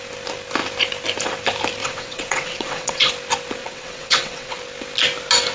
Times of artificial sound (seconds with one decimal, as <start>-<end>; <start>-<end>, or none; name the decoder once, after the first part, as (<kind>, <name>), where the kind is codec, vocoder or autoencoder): 1.8-3.1 (vocoder, WaveNeXt); 3.6-4.6